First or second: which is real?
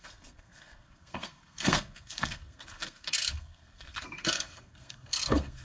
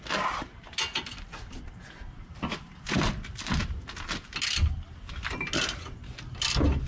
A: second